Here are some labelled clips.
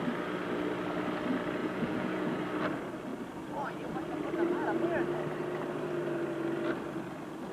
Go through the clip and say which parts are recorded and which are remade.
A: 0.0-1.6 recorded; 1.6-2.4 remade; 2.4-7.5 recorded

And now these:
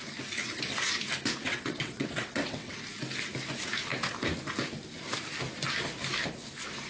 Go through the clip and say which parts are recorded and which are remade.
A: 0.0-1.4 recorded; 1.4-2.8 remade; 2.8-6.9 recorded